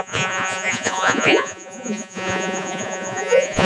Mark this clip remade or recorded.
remade